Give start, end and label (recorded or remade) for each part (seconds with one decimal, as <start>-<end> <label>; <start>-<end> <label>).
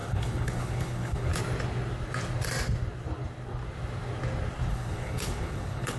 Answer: 0.0-1.3 remade; 1.3-4.7 recorded; 4.7-6.0 remade